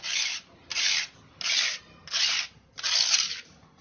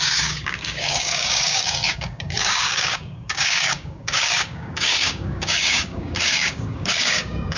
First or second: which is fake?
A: second